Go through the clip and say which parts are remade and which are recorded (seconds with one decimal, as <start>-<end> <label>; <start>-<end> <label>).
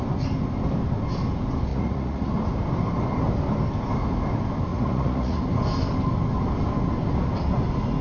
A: 0.0-1.7 recorded; 1.7-2.3 remade; 2.3-4.7 recorded; 4.7-5.4 remade; 5.4-8.0 recorded